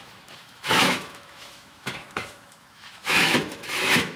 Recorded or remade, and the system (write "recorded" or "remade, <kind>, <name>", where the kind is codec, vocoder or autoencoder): remade, autoencoder, DAC-VAE